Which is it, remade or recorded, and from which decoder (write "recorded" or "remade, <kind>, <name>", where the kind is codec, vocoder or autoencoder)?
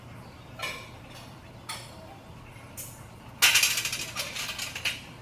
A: recorded